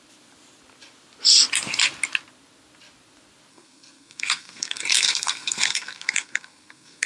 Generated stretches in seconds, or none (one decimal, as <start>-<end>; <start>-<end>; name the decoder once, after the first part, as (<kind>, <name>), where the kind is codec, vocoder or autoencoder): 3.5-7.1 (codec, SNAC)